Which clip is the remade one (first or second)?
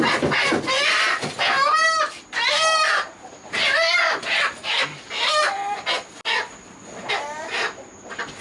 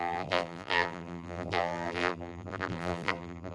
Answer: second